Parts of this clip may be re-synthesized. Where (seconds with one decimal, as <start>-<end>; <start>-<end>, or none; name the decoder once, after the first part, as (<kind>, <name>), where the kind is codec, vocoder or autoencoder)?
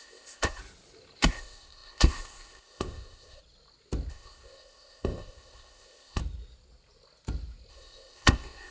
0.0-0.6 (codec, ZipCodec); 1.3-3.4; 4.1-6.2; 7.7-8.7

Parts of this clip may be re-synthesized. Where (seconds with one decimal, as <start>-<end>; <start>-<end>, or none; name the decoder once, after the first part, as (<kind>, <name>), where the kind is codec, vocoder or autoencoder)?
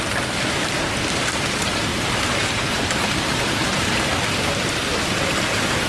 1.9-4.0 (vocoder, BigVGAN v2)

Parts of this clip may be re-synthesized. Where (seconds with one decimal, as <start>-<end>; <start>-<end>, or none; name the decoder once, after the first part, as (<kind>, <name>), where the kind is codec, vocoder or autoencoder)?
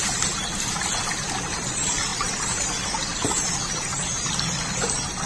none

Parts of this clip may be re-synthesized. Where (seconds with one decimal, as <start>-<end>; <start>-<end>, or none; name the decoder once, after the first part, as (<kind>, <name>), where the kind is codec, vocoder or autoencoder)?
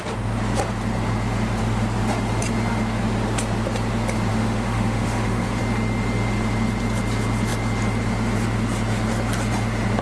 4.3-5.6 (autoencoder, DAC-VAE)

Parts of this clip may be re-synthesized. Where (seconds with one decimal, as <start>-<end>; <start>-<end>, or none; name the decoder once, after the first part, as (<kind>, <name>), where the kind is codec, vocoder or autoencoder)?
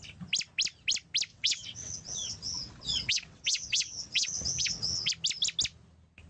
1.3-5.1 (vocoder, WaveNeXt)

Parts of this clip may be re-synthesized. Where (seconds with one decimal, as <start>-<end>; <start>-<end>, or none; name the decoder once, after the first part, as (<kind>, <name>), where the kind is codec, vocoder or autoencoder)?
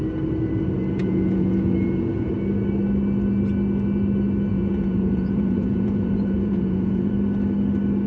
1.0-2.3 (vocoder, Vocos); 4.5-7.1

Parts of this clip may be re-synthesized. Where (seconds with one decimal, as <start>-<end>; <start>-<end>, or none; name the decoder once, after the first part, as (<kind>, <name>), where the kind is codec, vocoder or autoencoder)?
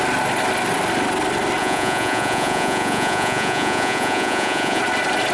1.6-4.8 (vocoder, Vocos)